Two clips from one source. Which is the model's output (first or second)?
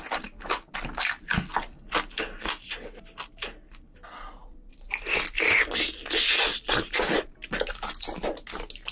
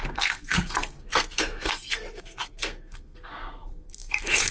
second